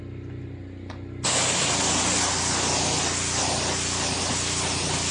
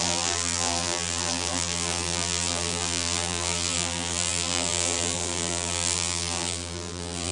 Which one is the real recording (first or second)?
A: first